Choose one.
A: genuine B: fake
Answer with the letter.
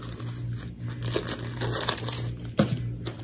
A